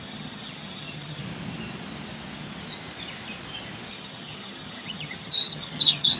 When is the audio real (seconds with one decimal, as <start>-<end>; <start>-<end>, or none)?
1.2-3.9